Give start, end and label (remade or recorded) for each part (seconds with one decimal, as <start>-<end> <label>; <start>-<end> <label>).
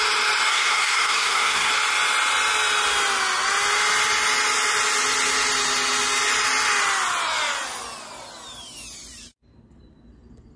0.0-0.5 recorded; 0.5-1.7 remade; 1.7-10.6 recorded